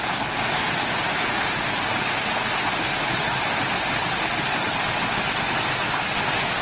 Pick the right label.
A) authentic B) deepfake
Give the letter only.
A